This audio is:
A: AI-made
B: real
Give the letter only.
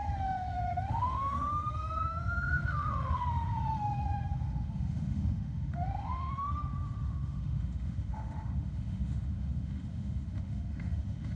A